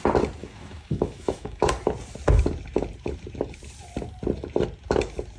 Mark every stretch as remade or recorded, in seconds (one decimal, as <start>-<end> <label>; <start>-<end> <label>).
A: 0.0-0.4 recorded; 0.4-1.7 remade; 1.7-5.4 recorded